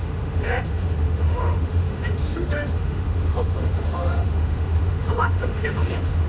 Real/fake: fake